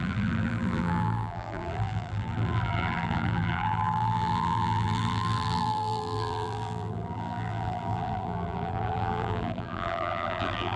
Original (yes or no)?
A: no